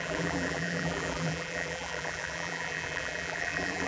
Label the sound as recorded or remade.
remade